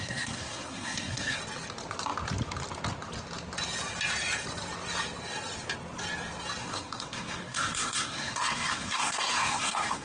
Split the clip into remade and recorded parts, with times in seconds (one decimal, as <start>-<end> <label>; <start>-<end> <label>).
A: 0.0-1.4 remade; 1.4-6.6 recorded; 6.6-10.0 remade